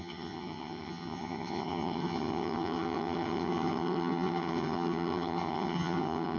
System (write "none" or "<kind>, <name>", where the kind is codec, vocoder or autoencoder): vocoder, HiFi-GAN